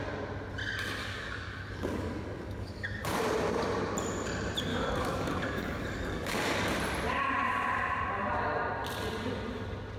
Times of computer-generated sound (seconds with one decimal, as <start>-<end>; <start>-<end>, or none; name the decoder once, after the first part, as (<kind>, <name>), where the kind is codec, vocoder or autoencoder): 1.0-3.2 (codec, DAC); 4.7-6.7